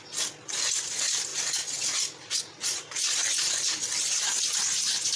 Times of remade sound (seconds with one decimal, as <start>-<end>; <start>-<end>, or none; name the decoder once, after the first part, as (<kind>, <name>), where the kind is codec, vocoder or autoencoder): 3.0-5.2 (vocoder, BigVGAN v2)